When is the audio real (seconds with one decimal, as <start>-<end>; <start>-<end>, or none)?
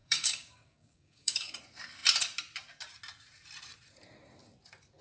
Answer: 1.6-5.0